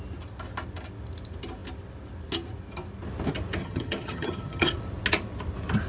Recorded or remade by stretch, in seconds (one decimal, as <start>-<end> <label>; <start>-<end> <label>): 0.0-3.6 recorded; 3.6-4.7 remade; 4.7-5.9 recorded